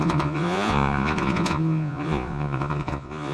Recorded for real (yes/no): no